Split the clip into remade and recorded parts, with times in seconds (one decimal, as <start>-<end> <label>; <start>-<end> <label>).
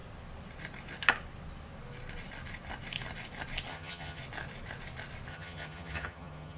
0.0-3.7 recorded; 3.7-4.2 remade; 4.2-5.3 recorded; 5.3-6.6 remade